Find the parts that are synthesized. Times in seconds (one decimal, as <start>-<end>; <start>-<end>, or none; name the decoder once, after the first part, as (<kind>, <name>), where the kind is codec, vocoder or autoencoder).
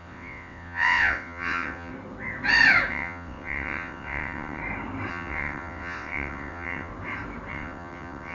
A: 0.0-1.9 (vocoder, WaveNeXt); 2.9-4.6; 5.1-6.9; 7.5-8.3